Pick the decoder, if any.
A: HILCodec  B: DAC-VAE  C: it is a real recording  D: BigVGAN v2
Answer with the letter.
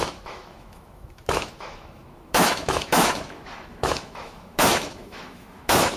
B